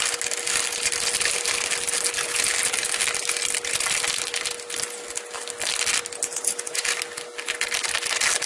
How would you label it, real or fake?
real